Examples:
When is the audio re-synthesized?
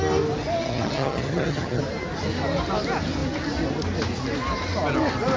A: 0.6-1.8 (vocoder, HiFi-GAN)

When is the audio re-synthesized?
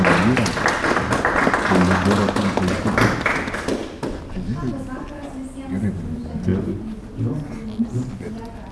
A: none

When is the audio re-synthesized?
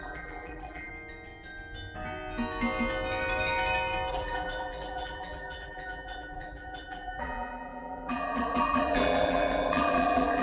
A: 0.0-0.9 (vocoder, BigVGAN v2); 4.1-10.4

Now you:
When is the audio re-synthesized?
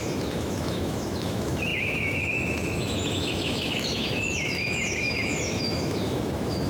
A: 0.0-6.7 (autoencoder, DAC-VAE)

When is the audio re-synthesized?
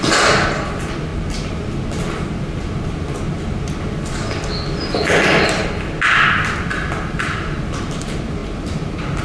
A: 0.0-1.1 (vocoder, BigVGAN v2); 4.9-5.6; 6.6-9.2